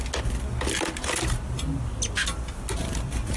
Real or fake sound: real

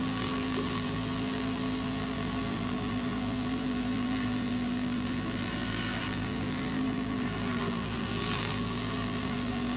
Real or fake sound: fake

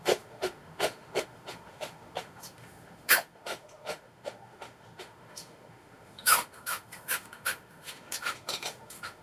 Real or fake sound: fake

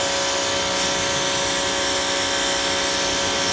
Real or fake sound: real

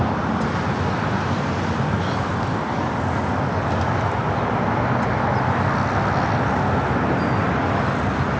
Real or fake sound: real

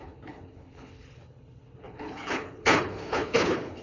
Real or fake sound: fake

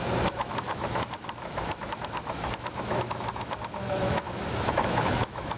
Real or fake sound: fake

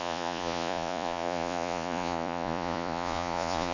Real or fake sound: fake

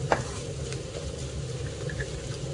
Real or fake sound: fake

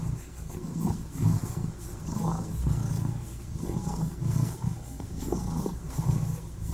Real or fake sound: fake